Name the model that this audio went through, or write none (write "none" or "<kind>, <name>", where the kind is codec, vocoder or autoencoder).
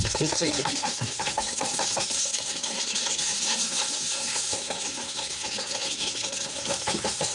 codec, SNAC